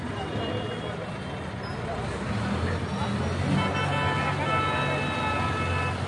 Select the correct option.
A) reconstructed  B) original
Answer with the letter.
B